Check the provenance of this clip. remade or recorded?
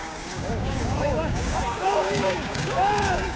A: remade